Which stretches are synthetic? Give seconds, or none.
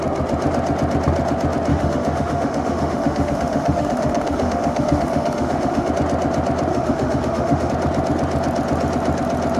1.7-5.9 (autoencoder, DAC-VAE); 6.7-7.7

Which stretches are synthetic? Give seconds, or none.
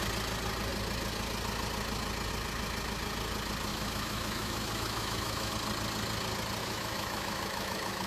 3.7-5.5 (autoencoder, DAC-VAE); 6.6-8.1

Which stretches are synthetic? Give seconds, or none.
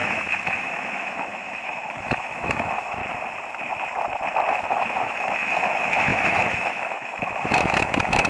0.0-3.0 (autoencoder, DAC-VAE); 4.5-8.3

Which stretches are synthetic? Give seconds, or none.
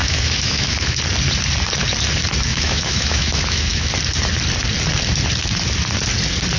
0.0-1.0 (autoencoder, DAC-VAE); 2.5-3.9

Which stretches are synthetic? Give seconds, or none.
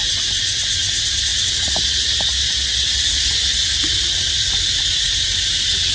none